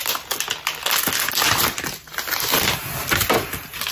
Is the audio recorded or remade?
recorded